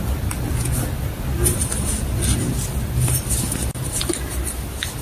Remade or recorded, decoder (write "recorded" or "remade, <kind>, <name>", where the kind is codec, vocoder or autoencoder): recorded